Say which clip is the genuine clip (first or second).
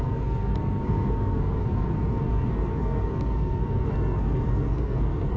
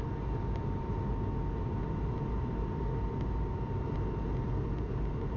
second